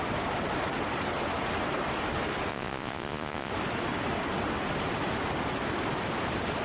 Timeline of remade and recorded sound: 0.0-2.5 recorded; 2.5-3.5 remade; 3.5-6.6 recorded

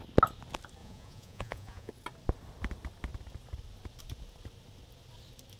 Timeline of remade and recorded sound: 0.0-0.8 recorded; 0.8-1.9 remade; 1.9-5.6 recorded

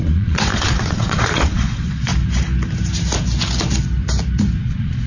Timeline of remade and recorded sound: 0.0-2.1 remade; 2.1-4.6 recorded; 4.6-5.1 remade

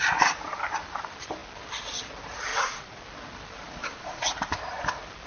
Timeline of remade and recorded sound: 0.0-2.5 recorded; 2.5-3.0 remade; 3.0-3.8 recorded; 3.8-4.5 remade; 4.5-5.3 recorded

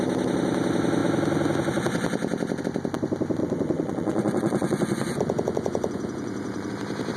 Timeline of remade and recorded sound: 0.0-3.4 recorded; 3.4-6.7 remade; 6.7-7.2 recorded